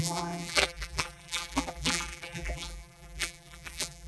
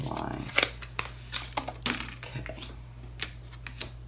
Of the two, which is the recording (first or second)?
second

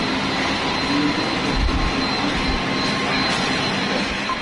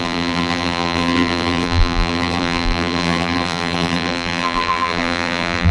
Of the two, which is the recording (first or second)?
first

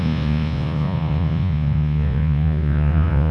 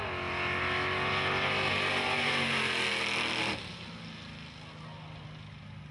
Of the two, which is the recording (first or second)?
second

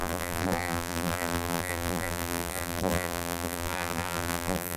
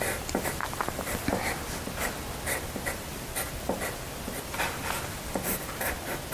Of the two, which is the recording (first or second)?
second